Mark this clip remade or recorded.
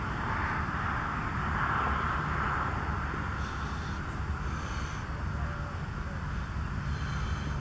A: recorded